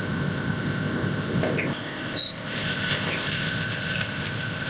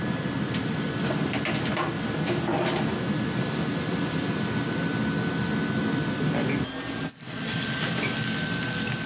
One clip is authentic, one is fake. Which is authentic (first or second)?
second